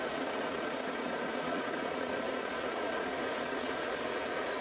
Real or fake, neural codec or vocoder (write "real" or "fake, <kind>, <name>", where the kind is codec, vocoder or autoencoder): fake, vocoder, Vocos